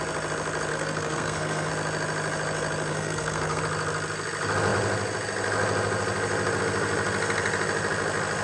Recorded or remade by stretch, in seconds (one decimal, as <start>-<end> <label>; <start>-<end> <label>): 0.0-0.7 recorded; 0.7-1.7 remade; 1.7-2.9 recorded; 2.9-3.6 remade; 3.6-8.4 recorded